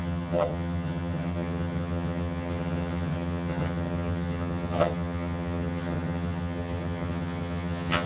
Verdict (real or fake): fake